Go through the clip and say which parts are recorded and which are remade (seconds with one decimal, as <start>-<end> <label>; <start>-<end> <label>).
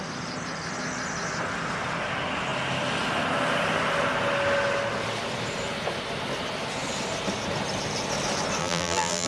0.0-8.6 recorded; 8.6-9.3 remade